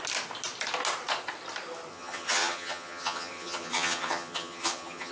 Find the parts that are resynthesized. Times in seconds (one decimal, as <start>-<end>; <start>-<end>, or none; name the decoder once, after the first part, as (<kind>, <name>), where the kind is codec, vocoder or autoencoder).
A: 1.9-5.1 (vocoder, HiFi-GAN)